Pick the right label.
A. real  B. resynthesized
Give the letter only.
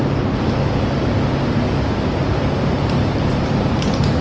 A